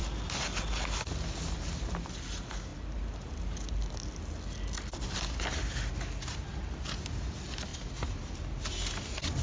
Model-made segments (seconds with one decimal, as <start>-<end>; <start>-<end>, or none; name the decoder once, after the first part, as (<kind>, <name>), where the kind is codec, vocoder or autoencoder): none